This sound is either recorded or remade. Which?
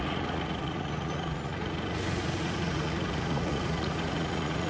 remade